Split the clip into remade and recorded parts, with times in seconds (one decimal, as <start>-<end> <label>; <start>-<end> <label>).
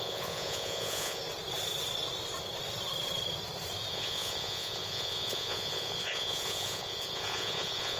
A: 0.0-1.2 remade; 1.2-3.9 recorded; 3.9-8.0 remade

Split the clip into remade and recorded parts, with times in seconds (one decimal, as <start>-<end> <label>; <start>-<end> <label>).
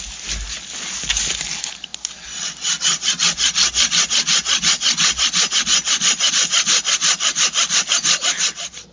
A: 0.0-8.9 recorded